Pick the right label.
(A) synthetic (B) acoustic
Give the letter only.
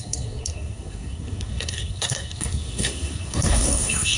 A